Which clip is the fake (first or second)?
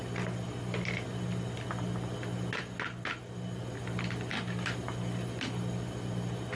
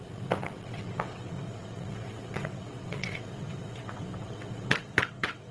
second